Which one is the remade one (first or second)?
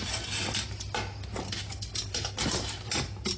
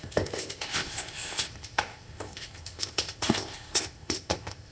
second